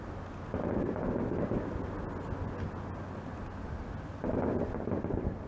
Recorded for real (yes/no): yes